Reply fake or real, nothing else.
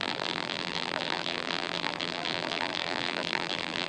fake